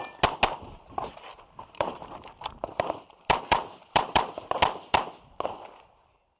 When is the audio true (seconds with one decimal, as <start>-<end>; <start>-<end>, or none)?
0.0-1.3; 5.1-6.4